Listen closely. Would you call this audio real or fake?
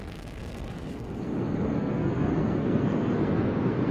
fake